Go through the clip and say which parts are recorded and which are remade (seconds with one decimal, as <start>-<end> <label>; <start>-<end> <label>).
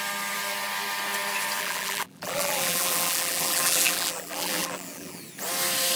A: 0.0-1.6 recorded; 1.6-5.2 remade; 5.2-6.0 recorded